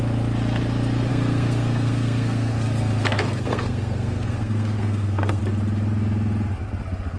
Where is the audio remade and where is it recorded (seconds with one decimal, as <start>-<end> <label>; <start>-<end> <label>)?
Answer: 0.0-1.1 recorded; 1.1-5.4 remade; 5.4-7.2 recorded